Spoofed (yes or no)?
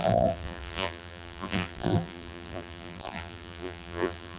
yes